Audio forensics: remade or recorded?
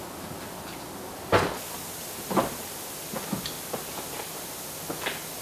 recorded